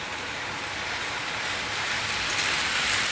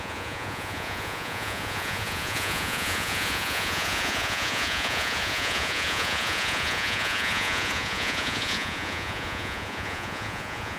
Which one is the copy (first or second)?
second